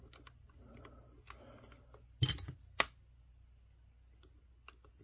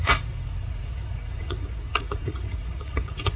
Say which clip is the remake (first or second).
second